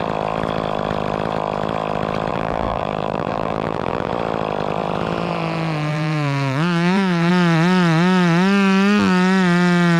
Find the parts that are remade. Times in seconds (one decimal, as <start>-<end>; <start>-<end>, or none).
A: 2.3-4.1; 5.9-7.3